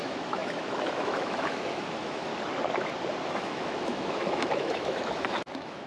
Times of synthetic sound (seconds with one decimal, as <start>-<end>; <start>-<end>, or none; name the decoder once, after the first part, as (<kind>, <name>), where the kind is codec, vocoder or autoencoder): 0.0-2.3 (autoencoder, DAC-VAE); 3.3-5.9